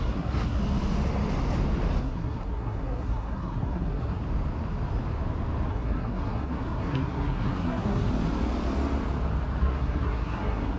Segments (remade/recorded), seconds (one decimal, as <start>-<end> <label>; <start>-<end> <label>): 0.0-0.6 remade; 0.6-2.0 recorded; 2.0-4.2 remade; 4.2-5.7 recorded; 5.7-8.1 remade; 8.1-9.6 recorded; 9.6-10.8 remade